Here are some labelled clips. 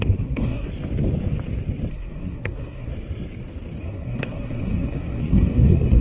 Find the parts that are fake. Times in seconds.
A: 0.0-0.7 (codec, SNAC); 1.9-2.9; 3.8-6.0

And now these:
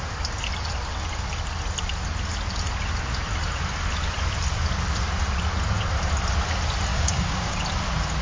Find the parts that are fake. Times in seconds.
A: 6.9-7.6 (codec, DAC)

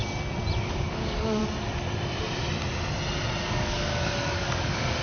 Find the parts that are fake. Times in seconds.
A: 0.6-1.4 (codec, DAC); 3.4-5.0